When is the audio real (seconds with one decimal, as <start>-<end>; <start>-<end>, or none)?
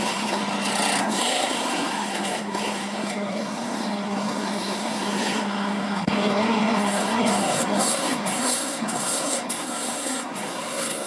0.4-1.0